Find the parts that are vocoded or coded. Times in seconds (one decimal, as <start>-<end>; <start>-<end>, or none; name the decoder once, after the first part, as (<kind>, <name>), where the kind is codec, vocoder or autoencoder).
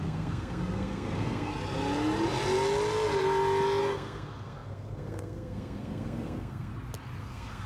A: 0.0-1.5 (codec, SNAC); 3.8-6.7; 7.2-7.7